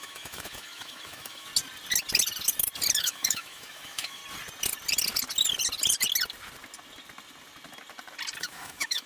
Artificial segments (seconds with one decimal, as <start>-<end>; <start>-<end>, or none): 0.0-1.5; 3.0-4.2; 8.4-9.1